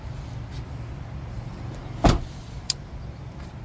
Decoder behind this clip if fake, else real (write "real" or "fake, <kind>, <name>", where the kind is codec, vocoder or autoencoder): real